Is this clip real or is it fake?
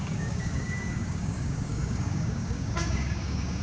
fake